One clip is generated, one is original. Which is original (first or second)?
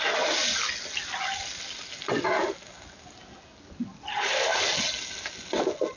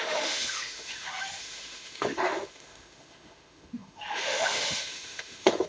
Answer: first